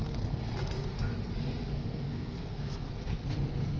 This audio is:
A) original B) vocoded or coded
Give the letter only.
B